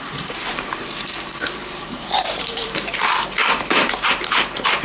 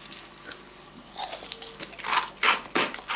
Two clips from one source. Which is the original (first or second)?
second